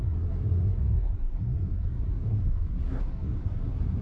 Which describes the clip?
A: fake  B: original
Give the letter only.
A